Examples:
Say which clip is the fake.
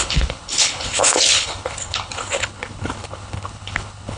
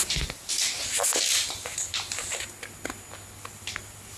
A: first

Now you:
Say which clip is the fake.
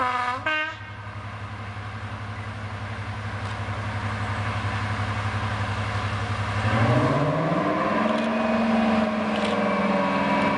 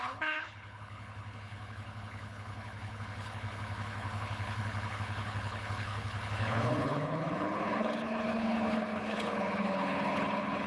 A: second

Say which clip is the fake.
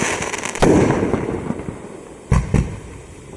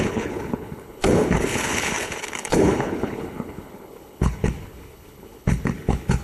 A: second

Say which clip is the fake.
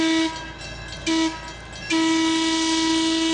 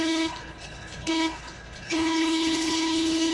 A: second